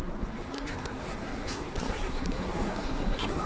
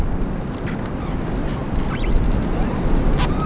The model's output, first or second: first